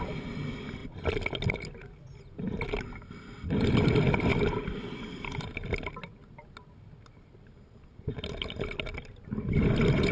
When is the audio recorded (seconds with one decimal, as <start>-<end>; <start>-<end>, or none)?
0.0-10.1